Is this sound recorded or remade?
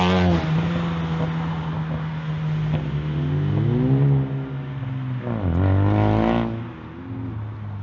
recorded